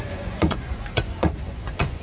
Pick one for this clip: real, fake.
fake